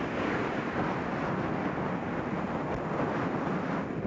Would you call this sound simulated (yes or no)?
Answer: no